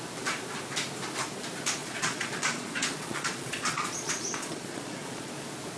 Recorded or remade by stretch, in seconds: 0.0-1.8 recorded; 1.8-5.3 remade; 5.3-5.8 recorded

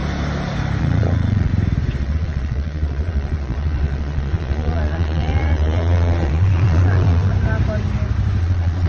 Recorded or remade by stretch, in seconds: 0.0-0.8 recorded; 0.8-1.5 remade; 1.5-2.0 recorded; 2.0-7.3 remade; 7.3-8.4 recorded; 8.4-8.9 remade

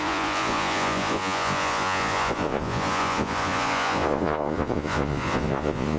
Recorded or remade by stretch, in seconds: 0.0-6.0 remade